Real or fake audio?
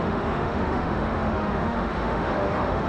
fake